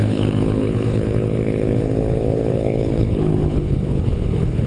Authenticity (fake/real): fake